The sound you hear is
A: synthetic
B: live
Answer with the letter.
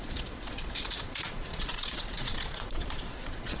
A